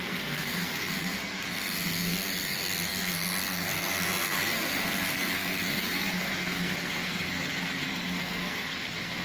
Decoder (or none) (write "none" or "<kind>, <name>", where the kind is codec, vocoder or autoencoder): codec, SNAC